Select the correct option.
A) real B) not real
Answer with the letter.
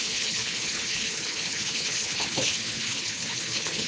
B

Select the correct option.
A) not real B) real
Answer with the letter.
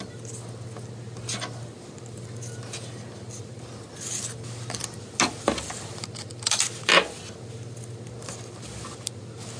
B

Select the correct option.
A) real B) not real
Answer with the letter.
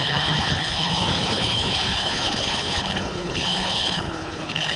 B